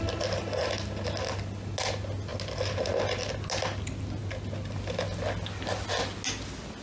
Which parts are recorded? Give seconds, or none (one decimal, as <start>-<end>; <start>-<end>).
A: 0.0-6.8